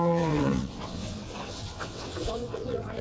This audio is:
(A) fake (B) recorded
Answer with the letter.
A